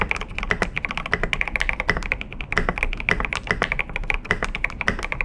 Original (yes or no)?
yes